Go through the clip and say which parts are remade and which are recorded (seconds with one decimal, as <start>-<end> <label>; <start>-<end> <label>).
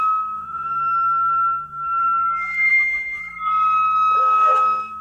0.0-2.0 remade; 2.0-2.7 recorded; 2.7-3.2 remade; 3.2-4.2 recorded; 4.2-5.0 remade